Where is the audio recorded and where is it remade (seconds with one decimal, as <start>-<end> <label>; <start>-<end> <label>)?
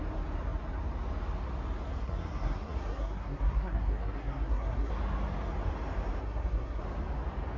0.0-2.0 recorded; 2.0-4.9 remade; 4.9-6.2 recorded; 6.2-6.8 remade; 6.8-7.6 recorded